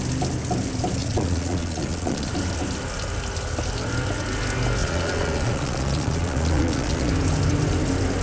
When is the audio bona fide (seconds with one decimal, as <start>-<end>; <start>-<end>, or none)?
0.0-1.0; 2.3-4.8; 7.1-8.2